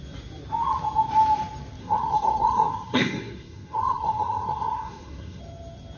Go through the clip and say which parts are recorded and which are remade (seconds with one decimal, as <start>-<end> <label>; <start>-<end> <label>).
0.0-1.8 recorded; 1.8-5.4 remade; 5.4-6.0 recorded